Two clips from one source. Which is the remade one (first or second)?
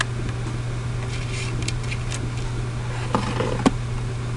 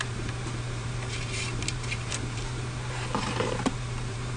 second